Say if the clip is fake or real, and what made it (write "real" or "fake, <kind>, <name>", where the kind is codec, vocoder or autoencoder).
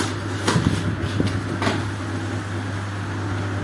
real